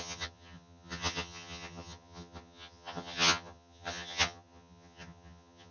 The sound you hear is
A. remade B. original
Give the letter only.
A